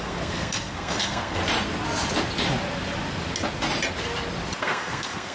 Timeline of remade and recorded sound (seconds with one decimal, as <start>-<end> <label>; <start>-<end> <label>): 0.0-1.4 remade; 1.4-4.6 recorded; 4.6-5.3 remade